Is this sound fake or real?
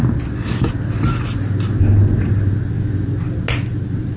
real